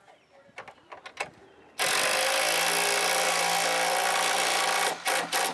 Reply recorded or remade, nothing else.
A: recorded